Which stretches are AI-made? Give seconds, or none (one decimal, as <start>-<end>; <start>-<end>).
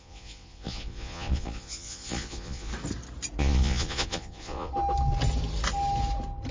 0.0-2.7; 3.4-4.7